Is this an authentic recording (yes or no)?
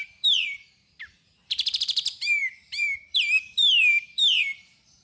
no